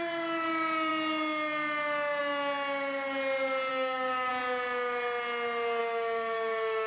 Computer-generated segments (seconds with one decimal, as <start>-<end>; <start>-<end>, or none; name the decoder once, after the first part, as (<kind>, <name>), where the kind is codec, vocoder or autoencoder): 3.7-4.3 (codec, DAC); 5.8-6.9